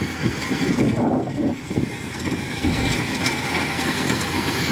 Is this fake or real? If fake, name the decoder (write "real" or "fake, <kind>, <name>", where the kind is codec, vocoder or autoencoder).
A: fake, codec, SNAC